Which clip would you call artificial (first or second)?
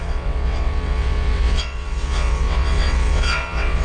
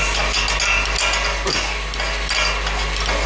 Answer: first